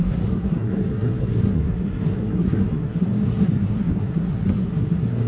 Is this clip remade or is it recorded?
remade